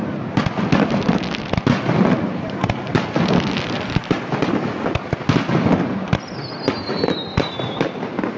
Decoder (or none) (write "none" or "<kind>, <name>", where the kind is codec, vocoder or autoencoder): none